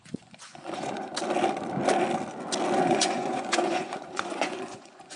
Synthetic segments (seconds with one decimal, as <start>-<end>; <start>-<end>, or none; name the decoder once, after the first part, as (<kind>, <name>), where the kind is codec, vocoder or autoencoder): 0.0-1.1 (vocoder, Vocos); 2.8-5.2